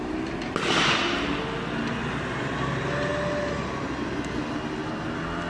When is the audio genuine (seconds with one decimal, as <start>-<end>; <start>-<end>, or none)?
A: 0.0-5.5